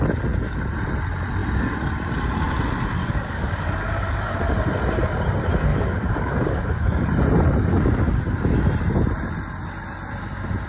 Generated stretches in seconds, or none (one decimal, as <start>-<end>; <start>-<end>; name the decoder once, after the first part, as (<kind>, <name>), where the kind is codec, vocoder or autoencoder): 3.0-4.6 (codec, DAC); 5.7-7.1